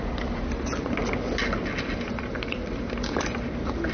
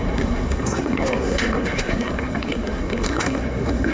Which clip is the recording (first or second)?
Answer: first